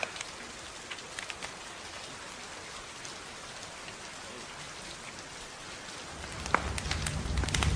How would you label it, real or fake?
real